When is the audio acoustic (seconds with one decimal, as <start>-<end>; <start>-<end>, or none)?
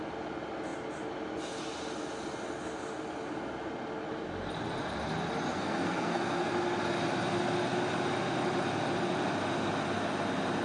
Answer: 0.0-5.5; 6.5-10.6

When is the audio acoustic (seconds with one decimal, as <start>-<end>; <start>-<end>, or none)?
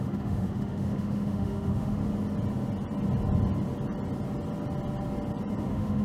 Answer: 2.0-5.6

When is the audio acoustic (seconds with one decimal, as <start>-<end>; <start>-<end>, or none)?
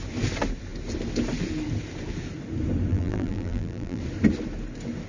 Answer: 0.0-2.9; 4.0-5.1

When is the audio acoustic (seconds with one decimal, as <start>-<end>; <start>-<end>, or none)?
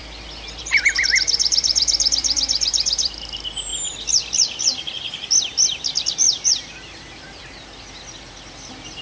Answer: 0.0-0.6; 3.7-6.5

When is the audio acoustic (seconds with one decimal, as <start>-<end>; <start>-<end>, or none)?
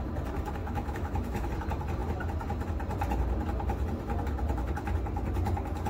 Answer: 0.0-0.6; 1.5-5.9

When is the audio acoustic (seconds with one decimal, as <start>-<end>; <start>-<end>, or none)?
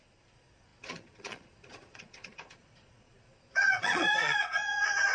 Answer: none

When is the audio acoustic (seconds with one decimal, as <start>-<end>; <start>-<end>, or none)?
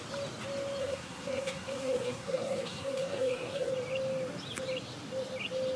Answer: 0.0-0.8; 3.7-5.8